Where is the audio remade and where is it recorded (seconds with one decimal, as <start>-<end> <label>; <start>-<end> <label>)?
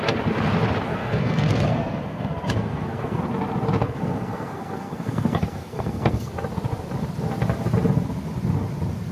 0.0-0.9 recorded; 0.9-3.2 remade; 3.2-3.8 recorded; 3.8-6.3 remade; 6.3-9.1 recorded